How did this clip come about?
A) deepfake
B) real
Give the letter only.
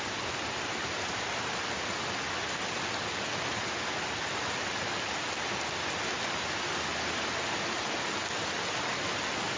B